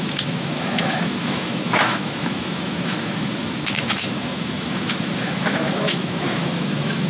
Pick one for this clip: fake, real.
fake